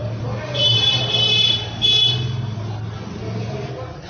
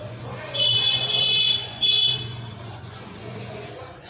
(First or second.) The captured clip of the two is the first